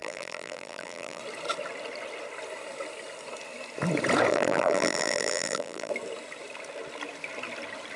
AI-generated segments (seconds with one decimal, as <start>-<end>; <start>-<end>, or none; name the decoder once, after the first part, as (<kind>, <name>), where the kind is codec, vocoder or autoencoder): 0.0-1.2 (vocoder, BigVGAN v2); 4.3-5.9